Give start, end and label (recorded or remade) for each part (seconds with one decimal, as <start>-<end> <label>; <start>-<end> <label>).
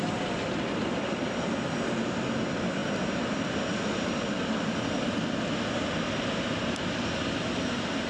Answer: 0.0-8.1 recorded